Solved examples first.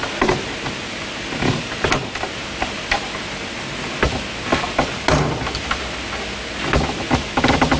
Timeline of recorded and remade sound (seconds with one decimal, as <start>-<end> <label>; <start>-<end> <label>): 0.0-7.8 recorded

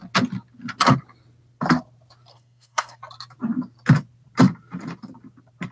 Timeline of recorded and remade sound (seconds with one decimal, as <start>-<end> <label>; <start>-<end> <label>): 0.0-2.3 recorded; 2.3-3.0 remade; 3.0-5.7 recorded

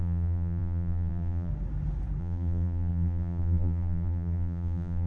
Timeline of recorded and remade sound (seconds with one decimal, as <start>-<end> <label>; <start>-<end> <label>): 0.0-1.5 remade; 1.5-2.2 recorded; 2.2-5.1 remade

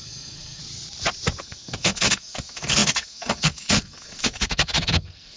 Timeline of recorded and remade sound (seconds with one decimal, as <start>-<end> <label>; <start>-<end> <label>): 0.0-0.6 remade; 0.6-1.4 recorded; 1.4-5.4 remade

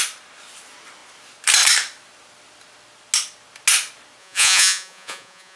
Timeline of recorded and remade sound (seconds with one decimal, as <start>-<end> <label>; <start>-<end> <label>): 0.0-4.2 recorded; 4.2-5.6 remade